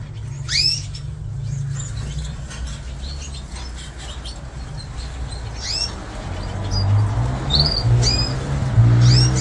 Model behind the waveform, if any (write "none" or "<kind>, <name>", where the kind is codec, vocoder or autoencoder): none